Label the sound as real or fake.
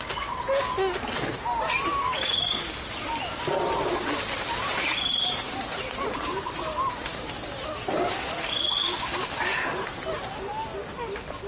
real